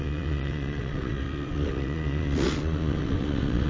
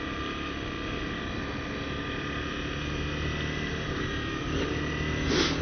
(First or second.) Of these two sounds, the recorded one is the second